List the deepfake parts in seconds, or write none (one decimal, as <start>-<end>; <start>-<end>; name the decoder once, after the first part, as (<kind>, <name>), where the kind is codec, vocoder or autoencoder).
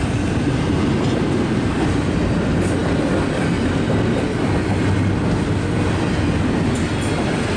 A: none